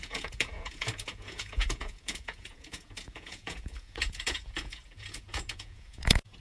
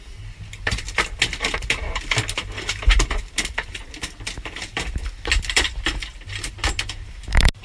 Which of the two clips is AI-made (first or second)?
first